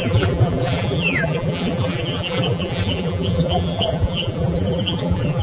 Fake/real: fake